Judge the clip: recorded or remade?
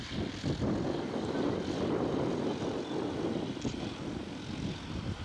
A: recorded